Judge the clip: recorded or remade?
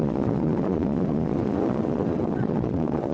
remade